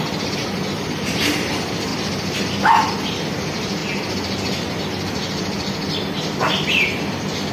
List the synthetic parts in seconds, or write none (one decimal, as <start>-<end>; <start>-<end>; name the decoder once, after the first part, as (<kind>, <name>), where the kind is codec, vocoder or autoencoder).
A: 1.9-2.9 (vocoder, BigVGAN v2)